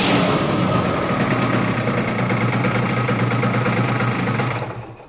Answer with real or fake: real